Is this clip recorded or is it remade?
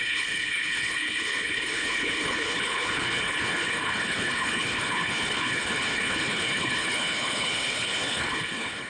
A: remade